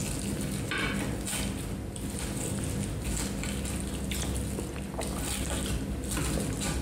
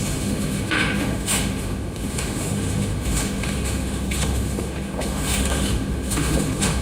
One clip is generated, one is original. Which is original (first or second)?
first